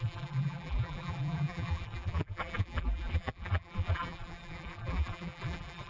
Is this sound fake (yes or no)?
yes